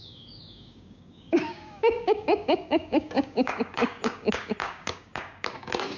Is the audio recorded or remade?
remade